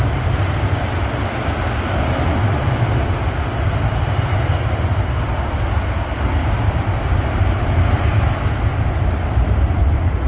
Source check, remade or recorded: recorded